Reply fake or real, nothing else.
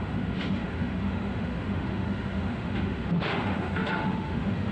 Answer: fake